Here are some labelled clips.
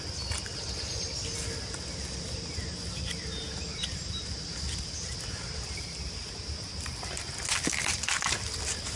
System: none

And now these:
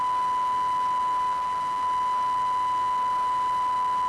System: none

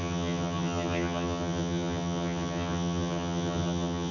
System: vocoder, HiFi-GAN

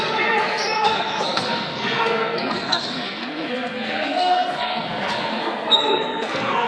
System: codec, SNAC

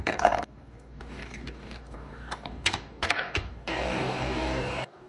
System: codec, DAC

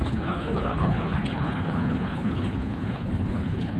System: codec, HILCodec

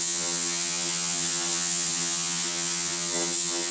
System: vocoder, HiFi-GAN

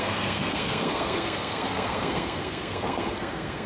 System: codec, SNAC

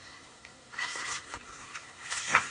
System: codec, SNAC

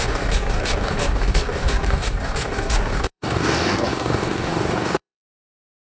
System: codec, DAC